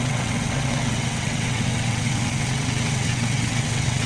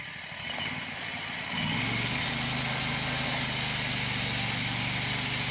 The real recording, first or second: second